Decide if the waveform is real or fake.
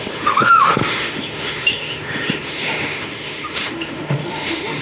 fake